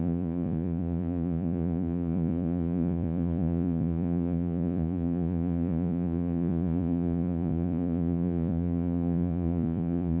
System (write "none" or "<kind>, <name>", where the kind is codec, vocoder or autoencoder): vocoder, Vocos